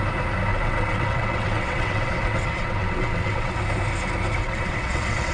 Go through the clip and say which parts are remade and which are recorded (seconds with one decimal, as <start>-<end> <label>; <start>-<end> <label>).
0.0-0.5 recorded; 0.5-3.6 remade; 3.6-4.4 recorded; 4.4-5.3 remade